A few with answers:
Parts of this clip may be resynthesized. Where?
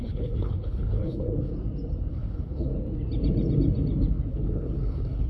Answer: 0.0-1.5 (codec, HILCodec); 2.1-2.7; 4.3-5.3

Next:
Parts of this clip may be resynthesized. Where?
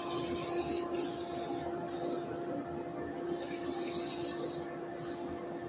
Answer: none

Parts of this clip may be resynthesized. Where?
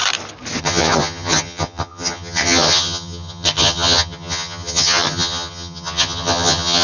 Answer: 0.6-6.8 (vocoder, HiFi-GAN)